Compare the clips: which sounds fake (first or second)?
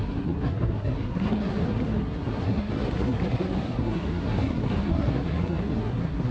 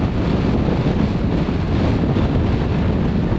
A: first